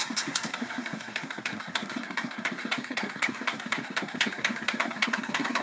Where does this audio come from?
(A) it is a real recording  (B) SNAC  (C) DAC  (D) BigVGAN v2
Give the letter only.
B